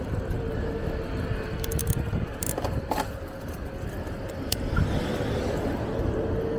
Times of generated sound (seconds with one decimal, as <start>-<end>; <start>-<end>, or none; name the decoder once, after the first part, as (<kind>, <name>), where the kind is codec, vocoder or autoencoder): none